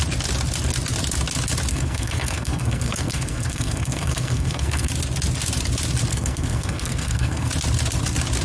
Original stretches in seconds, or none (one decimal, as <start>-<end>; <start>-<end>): 0.0-1.7; 4.9-6.1; 7.5-8.4